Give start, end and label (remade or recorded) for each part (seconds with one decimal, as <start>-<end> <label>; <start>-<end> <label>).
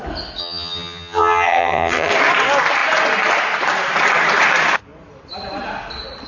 0.0-0.4 recorded; 0.4-2.1 remade; 2.1-6.3 recorded